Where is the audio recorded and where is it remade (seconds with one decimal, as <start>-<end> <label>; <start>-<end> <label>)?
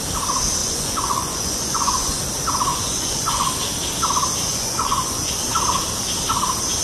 0.0-0.6 recorded; 0.6-2.2 remade; 2.2-2.7 recorded; 2.7-3.5 remade; 3.5-4.5 recorded; 4.5-5.4 remade; 5.4-6.8 recorded